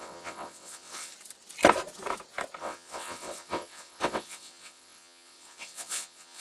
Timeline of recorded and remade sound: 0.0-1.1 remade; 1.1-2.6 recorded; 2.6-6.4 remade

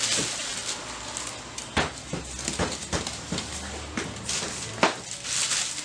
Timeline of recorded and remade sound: 0.0-5.8 recorded

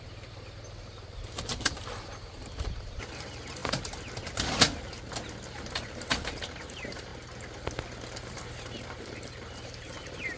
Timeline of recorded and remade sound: 0.0-3.6 remade; 3.6-5.7 recorded; 5.7-7.1 remade; 7.1-8.3 recorded; 8.3-10.4 remade

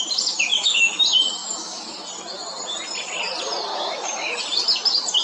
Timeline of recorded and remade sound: 0.0-0.5 recorded; 0.5-1.0 remade; 1.0-1.4 recorded; 1.4-2.0 remade; 2.0-3.7 recorded; 3.7-4.4 remade; 4.4-5.2 recorded

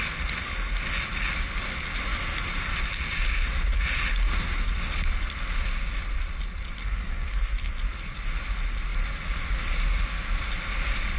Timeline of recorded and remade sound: 0.0-6.8 recorded; 6.8-7.7 remade; 7.7-11.2 recorded